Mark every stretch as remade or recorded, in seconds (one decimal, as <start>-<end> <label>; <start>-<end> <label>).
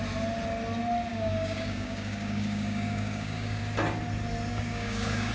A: 0.0-1.1 recorded; 1.1-3.6 remade; 3.6-4.5 recorded; 4.5-5.3 remade